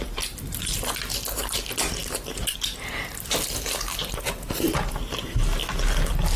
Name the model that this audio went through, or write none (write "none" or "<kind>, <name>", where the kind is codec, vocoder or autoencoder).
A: none